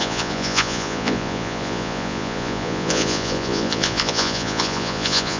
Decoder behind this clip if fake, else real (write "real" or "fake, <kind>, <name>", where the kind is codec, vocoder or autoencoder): fake, vocoder, Vocos